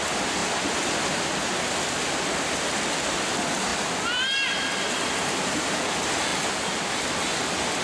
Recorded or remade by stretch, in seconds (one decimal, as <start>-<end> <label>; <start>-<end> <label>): 0.0-0.4 recorded; 0.4-3.2 remade; 3.2-3.7 recorded; 3.7-4.7 remade; 4.7-7.8 recorded